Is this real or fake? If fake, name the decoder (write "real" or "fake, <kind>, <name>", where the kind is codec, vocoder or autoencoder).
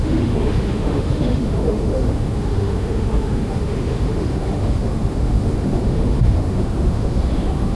fake, autoencoder, DAC-VAE